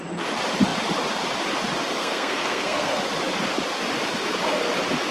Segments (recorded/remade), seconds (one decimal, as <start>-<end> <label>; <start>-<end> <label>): 0.0-2.0 recorded; 2.0-3.0 remade; 3.0-5.1 recorded